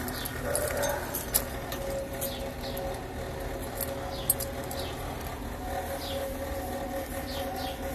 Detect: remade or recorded recorded